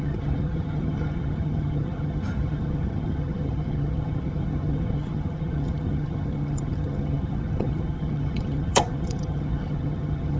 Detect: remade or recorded remade